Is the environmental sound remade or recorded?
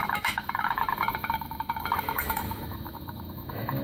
remade